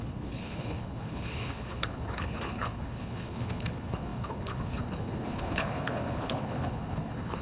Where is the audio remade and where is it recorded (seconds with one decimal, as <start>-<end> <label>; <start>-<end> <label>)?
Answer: 0.0-7.4 remade